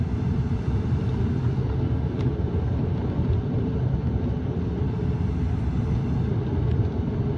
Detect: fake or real real